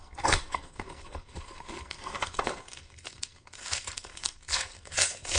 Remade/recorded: remade